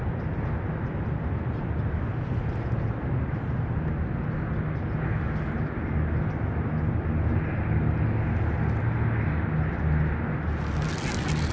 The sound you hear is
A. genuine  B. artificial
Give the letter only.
A